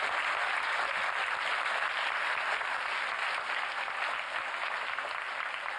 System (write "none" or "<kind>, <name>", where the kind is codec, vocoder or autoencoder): none